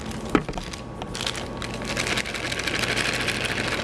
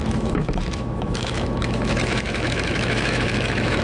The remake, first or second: second